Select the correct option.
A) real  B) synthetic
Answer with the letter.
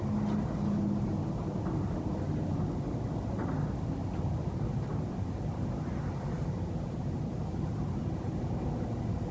A